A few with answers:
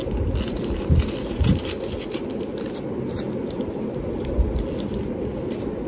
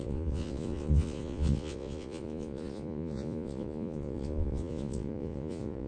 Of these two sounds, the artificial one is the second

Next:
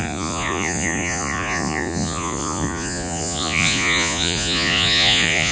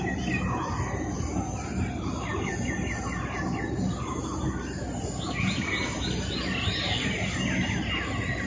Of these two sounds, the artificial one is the first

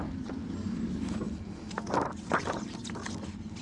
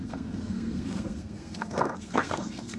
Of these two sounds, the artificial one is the second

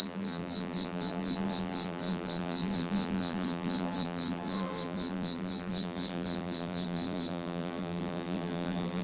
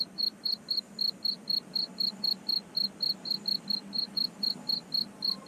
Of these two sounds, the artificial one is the first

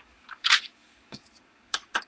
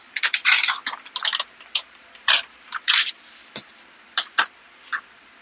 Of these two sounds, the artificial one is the first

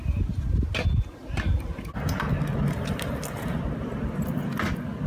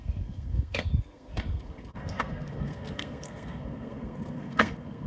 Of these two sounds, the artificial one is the second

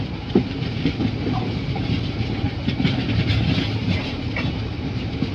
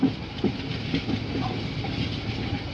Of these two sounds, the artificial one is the first